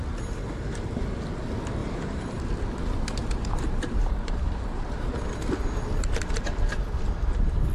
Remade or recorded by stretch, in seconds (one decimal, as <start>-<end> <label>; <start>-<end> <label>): 0.0-1.8 recorded; 1.8-2.4 remade; 2.4-3.2 recorded; 3.2-5.1 remade; 5.1-7.7 recorded